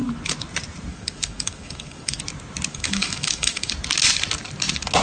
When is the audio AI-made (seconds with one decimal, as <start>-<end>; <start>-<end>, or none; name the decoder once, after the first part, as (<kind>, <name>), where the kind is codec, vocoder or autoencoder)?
0.9-2.2 (codec, DAC); 2.7-3.7